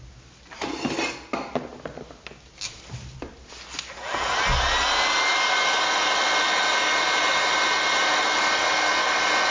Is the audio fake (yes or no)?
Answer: no